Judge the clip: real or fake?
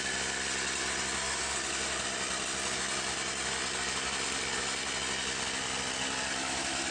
real